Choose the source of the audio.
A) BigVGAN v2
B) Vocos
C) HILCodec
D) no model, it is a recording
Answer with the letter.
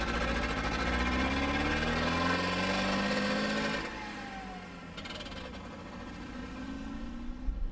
D